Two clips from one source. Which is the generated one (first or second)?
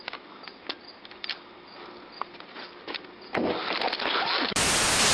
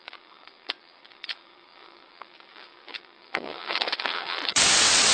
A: second